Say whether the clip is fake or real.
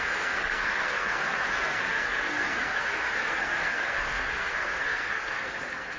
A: fake